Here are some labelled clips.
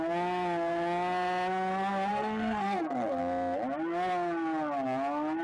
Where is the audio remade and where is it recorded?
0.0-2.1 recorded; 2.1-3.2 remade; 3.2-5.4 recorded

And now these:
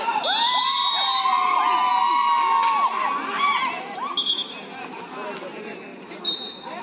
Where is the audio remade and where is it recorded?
0.0-5.9 recorded; 5.9-6.8 remade

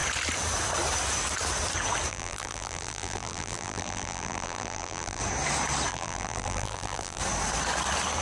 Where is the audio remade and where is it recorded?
0.0-2.1 recorded; 2.1-5.2 remade; 5.2-5.9 recorded; 5.9-7.2 remade; 7.2-8.2 recorded

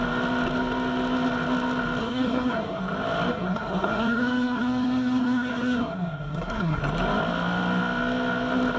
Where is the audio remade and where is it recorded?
0.0-2.0 recorded; 2.0-2.8 remade; 2.8-3.3 recorded; 3.3-6.8 remade; 6.8-8.8 recorded

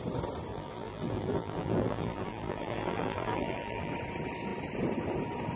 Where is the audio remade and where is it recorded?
0.0-0.5 recorded; 0.5-3.9 remade; 3.9-5.6 recorded

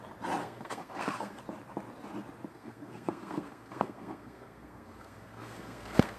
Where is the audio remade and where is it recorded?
0.0-0.4 recorded; 0.4-1.4 remade; 1.4-2.5 recorded; 2.5-6.2 remade

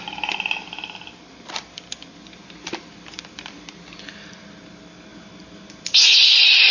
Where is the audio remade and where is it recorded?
0.0-6.7 recorded